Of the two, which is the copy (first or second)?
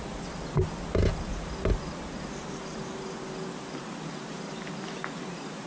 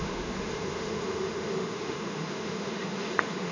second